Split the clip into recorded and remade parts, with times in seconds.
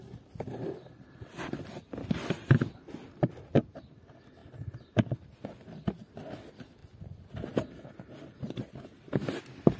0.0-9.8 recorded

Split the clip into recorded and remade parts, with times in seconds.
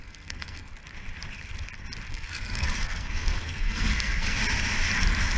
0.0-0.7 remade; 0.7-2.1 recorded; 2.1-4.4 remade; 4.4-5.4 recorded